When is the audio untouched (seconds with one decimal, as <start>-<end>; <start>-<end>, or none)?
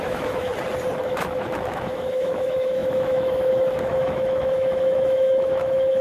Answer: 0.5-1.0